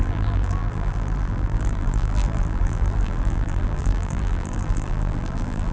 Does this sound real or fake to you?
fake